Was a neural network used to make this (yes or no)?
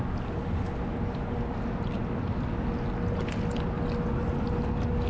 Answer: no